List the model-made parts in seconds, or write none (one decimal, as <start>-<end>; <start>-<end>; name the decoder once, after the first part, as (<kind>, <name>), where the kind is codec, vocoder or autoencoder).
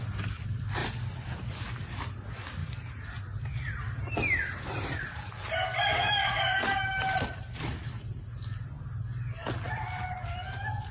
none